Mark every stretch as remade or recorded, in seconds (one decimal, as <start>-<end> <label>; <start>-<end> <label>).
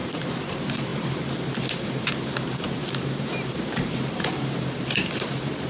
0.0-0.9 remade; 0.9-1.6 recorded; 1.6-5.7 remade